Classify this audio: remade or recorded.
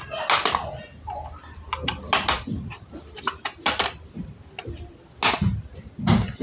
recorded